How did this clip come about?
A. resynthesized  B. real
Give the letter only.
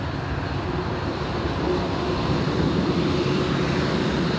B